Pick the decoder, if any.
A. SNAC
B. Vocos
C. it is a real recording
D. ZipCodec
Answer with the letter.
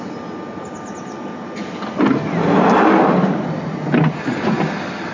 C